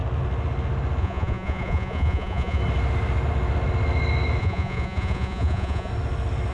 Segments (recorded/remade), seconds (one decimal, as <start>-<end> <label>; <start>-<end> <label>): 0.0-1.0 recorded; 1.0-2.6 remade; 2.6-4.4 recorded; 4.4-5.9 remade; 5.9-6.5 recorded